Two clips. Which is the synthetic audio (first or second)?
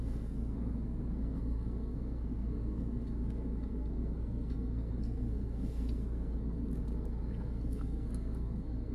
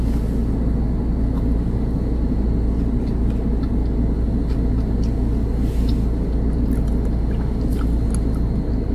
first